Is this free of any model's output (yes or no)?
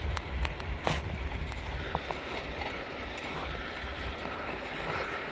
no